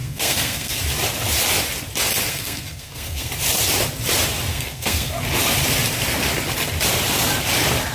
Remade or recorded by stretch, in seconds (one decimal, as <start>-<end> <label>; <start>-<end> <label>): 0.0-0.8 remade; 0.8-2.3 recorded; 2.3-3.3 remade; 3.3-4.5 recorded; 4.5-5.1 remade; 5.1-7.9 recorded